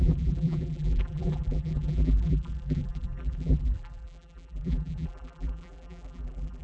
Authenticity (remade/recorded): remade